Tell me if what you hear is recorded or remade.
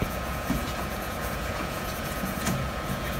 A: remade